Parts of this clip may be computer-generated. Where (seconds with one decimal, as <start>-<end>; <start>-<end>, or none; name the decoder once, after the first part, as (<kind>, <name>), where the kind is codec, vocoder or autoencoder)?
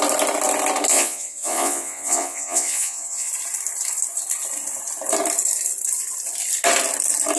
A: 0.9-3.3 (vocoder, Vocos)